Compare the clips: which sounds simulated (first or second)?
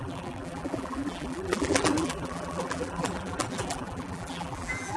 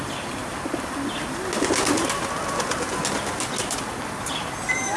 first